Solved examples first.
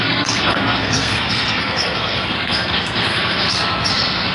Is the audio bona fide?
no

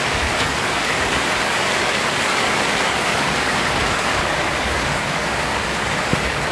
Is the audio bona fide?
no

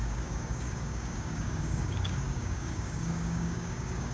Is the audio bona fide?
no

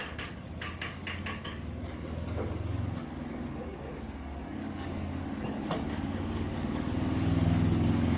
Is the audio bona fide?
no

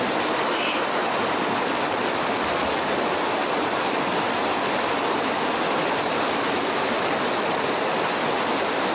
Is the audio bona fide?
yes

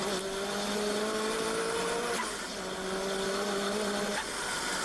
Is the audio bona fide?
yes